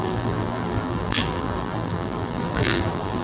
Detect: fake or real fake